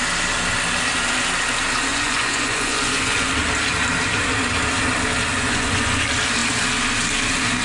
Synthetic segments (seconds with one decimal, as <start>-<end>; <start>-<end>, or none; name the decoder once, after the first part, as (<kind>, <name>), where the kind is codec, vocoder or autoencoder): 1.9-3.3 (vocoder, Vocos); 5.3-6.0